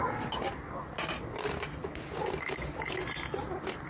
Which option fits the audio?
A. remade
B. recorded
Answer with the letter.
B